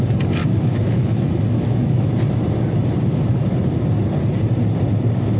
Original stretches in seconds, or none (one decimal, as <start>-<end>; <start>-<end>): 0.0-0.4; 2.2-5.4